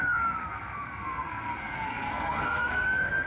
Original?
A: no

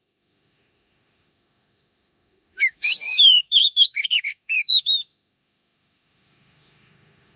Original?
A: no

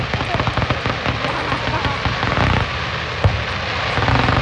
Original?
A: yes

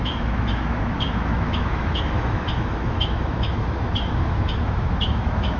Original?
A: no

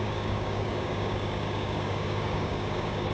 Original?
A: no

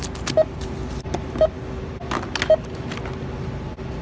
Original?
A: yes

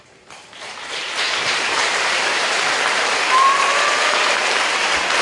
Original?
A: no